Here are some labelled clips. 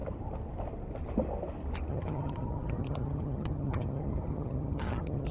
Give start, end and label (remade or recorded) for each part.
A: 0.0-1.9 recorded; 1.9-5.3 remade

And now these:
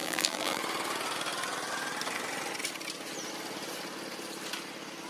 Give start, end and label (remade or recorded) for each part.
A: 0.0-0.6 remade; 0.6-5.1 recorded

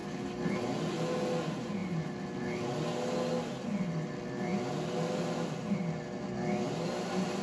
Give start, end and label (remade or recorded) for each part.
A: 0.0-7.4 recorded

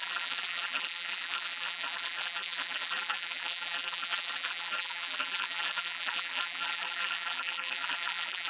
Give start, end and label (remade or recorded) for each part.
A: 0.0-8.5 remade

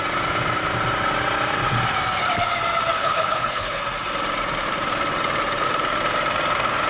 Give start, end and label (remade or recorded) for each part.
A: 0.0-3.0 recorded; 3.0-3.8 remade; 3.8-6.9 recorded

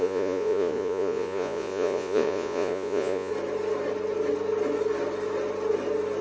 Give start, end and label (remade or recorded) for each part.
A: 0.0-3.3 remade; 3.3-6.2 recorded

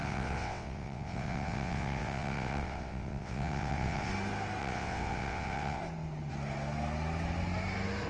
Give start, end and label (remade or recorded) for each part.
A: 0.0-4.1 remade; 4.1-4.6 recorded; 4.6-5.8 remade; 5.8-8.1 recorded

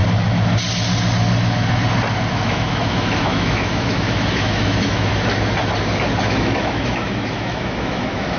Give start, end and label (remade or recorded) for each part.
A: 0.0-2.3 recorded; 2.3-5.1 remade; 5.1-6.2 recorded; 6.2-8.4 remade